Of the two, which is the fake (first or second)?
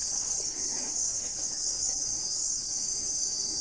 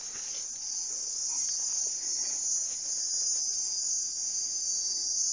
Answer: first